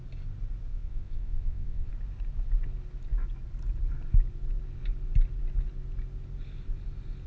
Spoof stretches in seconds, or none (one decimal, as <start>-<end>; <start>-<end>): 0.7-1.9